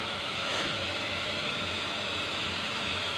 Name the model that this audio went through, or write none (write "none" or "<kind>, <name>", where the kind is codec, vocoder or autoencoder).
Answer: autoencoder, DAC-VAE